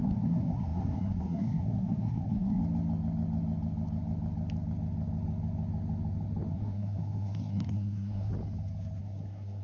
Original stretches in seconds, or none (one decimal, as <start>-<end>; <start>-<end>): 2.6-6.5; 8.3-9.0